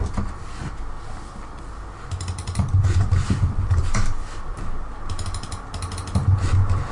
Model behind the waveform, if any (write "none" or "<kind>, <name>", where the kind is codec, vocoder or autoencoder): none